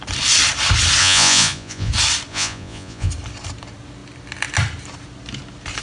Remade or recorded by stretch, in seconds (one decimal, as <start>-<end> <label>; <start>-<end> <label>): 0.0-1.0 recorded; 1.0-1.9 remade; 1.9-2.3 recorded; 2.3-3.1 remade; 3.1-5.8 recorded